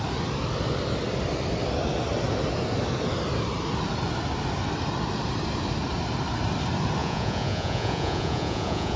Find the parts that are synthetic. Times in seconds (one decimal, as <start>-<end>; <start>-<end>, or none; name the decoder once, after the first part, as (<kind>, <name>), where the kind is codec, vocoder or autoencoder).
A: 7.0-9.0 (vocoder, Vocos)